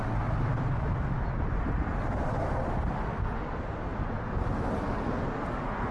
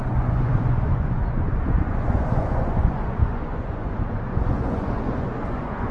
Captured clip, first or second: first